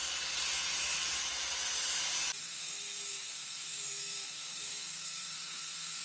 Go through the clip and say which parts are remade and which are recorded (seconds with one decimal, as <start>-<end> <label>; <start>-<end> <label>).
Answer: 0.0-2.4 recorded; 2.4-6.0 remade